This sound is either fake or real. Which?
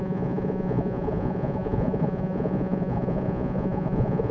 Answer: fake